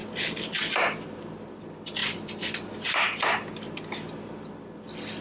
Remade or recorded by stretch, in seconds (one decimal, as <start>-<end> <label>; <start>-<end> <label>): 0.0-5.2 recorded